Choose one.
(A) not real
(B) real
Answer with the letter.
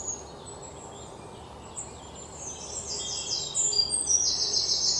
B